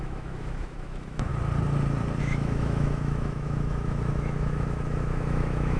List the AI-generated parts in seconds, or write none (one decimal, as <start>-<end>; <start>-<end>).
0.0-1.3; 2.2-5.8